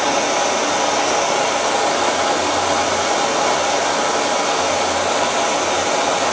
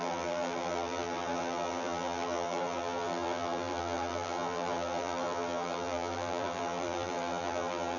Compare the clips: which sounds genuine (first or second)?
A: first